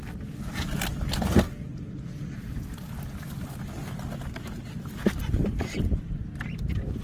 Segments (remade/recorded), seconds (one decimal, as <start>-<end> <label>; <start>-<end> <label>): 0.0-7.0 recorded